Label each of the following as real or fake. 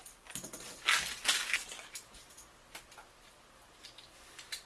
real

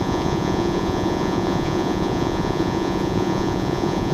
fake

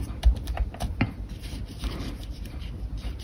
fake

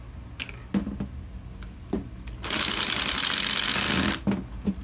real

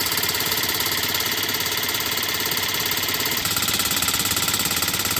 real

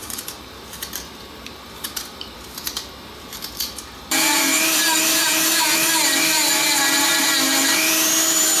fake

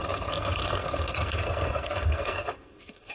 fake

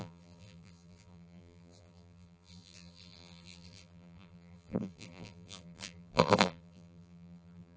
fake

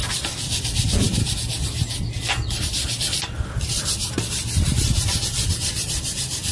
fake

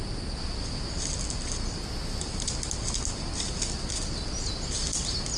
real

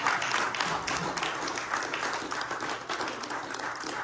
real